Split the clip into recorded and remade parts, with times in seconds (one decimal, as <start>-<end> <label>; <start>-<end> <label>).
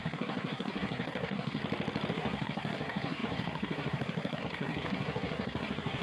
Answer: 0.0-1.6 remade; 1.6-2.1 recorded; 2.1-6.0 remade